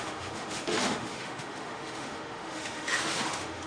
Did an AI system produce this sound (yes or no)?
yes